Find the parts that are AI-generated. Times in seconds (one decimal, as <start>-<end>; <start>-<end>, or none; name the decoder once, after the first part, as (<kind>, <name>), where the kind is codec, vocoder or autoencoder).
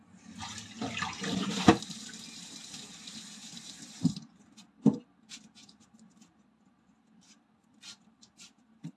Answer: none